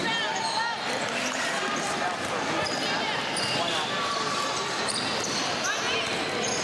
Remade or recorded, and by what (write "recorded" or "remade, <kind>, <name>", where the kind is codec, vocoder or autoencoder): recorded